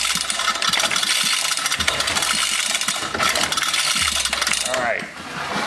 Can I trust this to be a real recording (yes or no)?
yes